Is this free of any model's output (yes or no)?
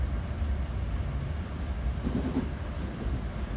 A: yes